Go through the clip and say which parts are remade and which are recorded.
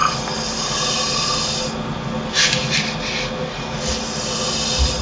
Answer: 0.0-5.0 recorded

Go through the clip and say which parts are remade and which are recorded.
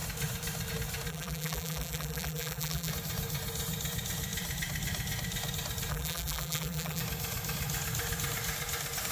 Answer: 0.0-1.1 recorded; 1.1-2.9 remade; 2.9-5.9 recorded; 5.9-7.0 remade; 7.0-9.1 recorded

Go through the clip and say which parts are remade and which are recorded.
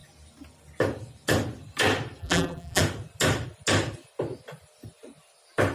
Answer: 0.0-2.2 recorded; 2.2-2.8 remade; 2.8-5.7 recorded